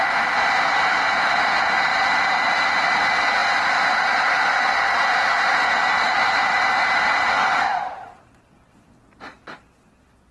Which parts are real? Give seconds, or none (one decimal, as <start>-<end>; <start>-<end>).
0.0-10.3